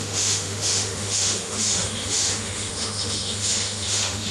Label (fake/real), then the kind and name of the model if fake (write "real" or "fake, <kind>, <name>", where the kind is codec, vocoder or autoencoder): fake, autoencoder, DAC-VAE